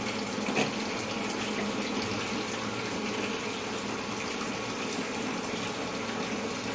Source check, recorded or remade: recorded